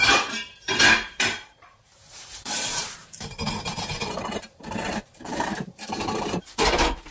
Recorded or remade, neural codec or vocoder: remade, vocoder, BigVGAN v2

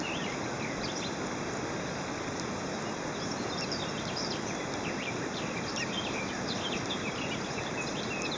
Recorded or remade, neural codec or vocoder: remade, vocoder, BigVGAN v2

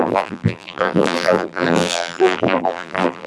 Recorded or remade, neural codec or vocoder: remade, vocoder, BigVGAN v2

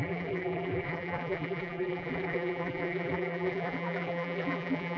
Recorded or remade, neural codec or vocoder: remade, vocoder, BigVGAN v2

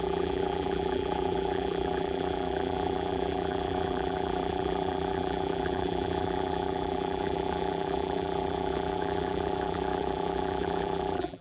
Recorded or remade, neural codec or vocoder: remade, vocoder, BigVGAN v2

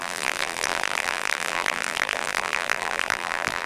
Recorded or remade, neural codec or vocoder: remade, vocoder, BigVGAN v2